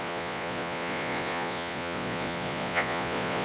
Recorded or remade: remade